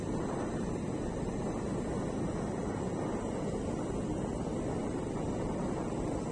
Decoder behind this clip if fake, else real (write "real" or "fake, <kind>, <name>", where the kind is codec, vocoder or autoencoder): real